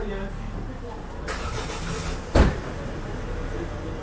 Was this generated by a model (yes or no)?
no